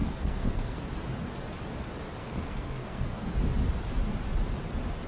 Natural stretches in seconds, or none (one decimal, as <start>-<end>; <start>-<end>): 0.8-2.2; 3.3-5.1